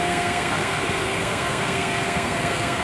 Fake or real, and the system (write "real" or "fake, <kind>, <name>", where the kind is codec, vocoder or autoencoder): fake, codec, SNAC